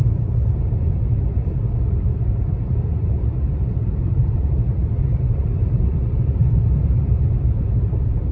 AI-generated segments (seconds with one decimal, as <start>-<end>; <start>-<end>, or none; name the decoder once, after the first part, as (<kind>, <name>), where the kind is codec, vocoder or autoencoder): 0.0-8.3 (vocoder, BigVGAN v2)